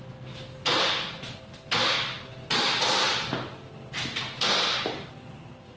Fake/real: real